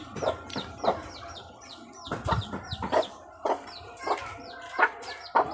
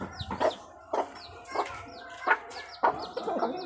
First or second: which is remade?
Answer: first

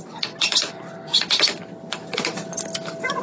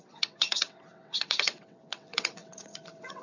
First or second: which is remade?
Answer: second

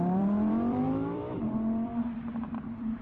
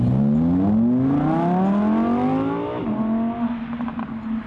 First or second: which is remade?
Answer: first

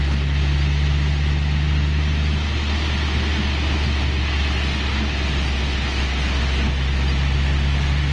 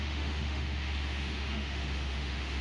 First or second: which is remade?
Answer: second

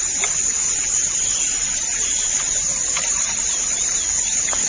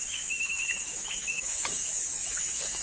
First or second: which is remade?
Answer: second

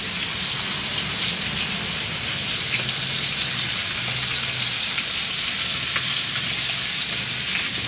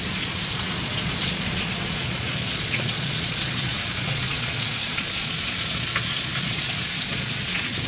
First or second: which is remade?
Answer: second